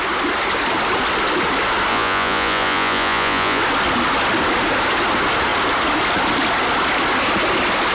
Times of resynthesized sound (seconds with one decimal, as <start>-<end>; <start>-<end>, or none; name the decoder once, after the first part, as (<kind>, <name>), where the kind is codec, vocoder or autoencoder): 1.9-3.6 (vocoder, Vocos)